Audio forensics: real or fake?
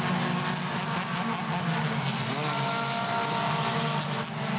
real